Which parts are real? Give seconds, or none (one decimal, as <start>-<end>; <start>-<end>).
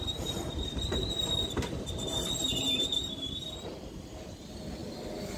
0.0-5.4